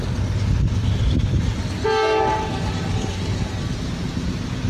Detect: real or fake real